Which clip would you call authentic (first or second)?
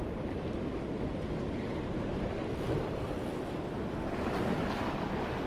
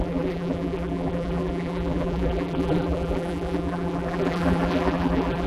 first